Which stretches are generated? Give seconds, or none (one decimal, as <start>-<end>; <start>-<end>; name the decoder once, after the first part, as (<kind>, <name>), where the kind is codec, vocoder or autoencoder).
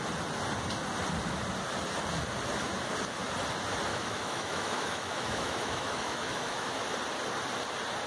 3.9-6.7 (autoencoder, DAC-VAE)